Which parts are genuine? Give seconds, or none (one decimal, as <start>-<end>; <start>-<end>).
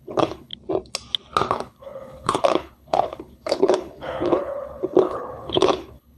0.5-1.5